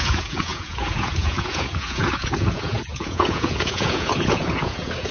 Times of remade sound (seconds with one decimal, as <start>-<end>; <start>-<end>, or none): 0.0-5.1